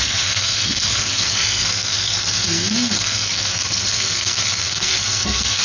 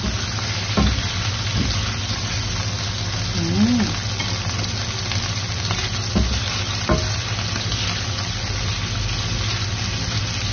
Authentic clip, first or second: second